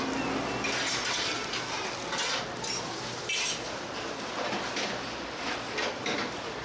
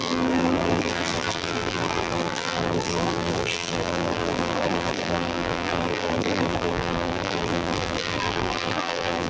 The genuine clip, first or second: first